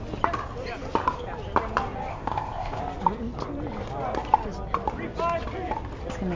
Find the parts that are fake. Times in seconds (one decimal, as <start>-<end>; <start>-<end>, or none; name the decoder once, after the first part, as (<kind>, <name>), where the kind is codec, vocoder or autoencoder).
2.1-2.8 (codec, ZipCodec)

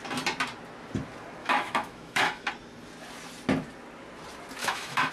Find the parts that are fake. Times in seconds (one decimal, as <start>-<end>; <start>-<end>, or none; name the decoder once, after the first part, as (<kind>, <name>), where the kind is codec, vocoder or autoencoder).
1.4-2.5 (autoencoder, DAC-VAE); 4.6-5.1

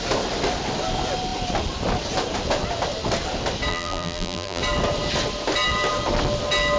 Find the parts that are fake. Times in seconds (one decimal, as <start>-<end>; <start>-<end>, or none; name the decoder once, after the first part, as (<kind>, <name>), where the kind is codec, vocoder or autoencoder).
3.7-4.6 (vocoder, BigVGAN v2)

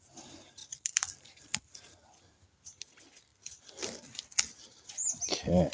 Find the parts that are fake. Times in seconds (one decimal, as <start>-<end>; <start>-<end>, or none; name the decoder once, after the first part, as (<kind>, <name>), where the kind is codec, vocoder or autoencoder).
0.6-2.2 (vocoder, BigVGAN v2)

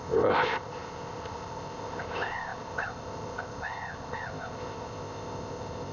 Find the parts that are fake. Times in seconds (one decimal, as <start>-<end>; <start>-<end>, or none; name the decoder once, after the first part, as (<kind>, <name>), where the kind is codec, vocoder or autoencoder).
0.0-5.9 (codec, ZipCodec)

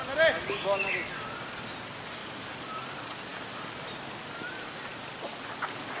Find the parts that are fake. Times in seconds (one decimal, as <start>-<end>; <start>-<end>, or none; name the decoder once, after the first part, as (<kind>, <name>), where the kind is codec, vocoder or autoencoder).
2.2-2.9 (vocoder, BigVGAN v2)

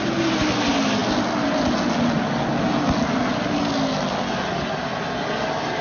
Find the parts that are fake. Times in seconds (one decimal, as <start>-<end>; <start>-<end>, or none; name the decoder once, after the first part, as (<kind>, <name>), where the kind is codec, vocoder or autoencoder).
none

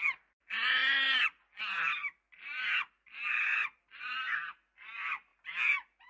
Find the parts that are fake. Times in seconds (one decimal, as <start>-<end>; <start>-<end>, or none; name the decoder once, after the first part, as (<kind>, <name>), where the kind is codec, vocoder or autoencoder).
none